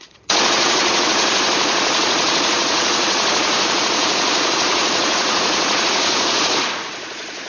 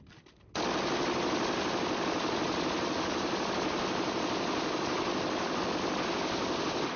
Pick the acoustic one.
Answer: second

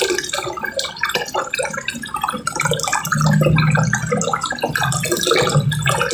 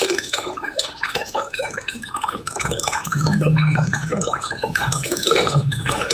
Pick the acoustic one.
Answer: first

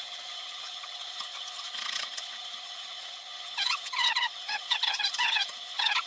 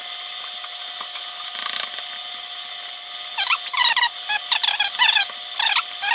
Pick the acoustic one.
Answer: second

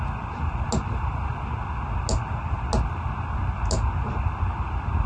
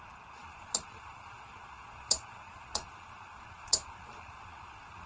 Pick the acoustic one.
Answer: first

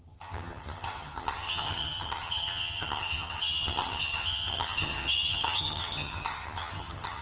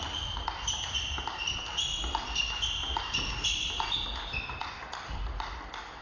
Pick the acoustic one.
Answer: second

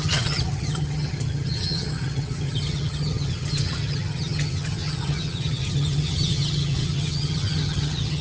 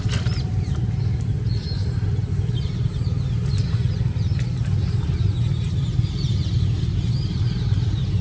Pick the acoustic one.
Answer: second